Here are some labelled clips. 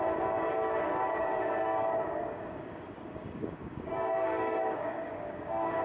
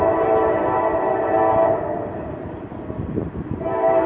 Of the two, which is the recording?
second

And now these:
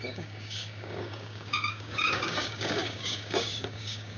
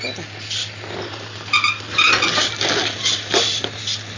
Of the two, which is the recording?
second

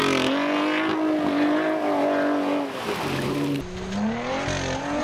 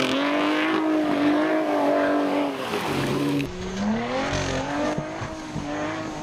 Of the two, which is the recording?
first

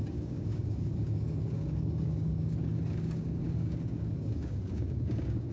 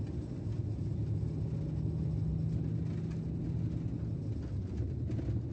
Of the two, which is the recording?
second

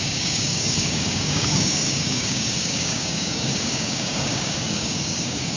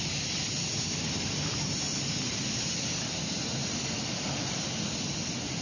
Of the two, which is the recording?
second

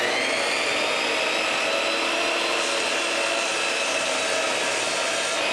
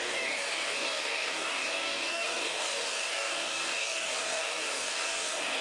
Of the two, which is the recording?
first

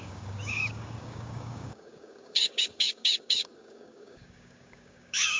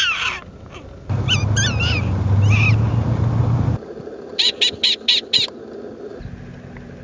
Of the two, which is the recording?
second